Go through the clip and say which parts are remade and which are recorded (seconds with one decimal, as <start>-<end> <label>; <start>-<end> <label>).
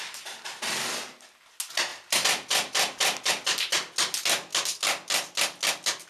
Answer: 0.0-1.9 recorded; 1.9-3.3 remade; 3.3-6.1 recorded